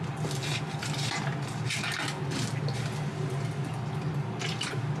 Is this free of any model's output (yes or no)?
yes